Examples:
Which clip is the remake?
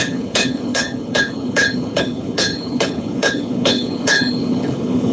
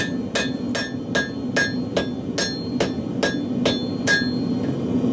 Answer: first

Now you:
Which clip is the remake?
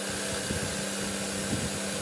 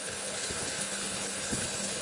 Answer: second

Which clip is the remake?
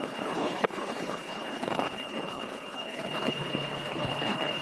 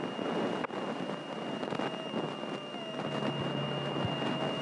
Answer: first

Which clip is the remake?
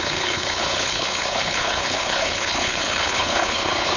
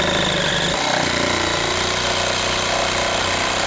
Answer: first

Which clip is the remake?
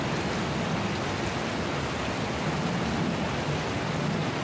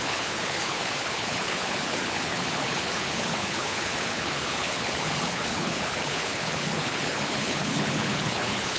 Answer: second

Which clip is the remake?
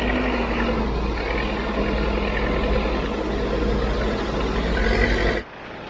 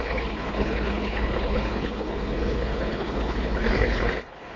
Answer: second